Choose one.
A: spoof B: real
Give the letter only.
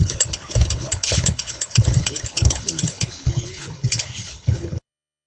A